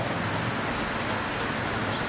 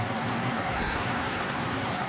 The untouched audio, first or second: first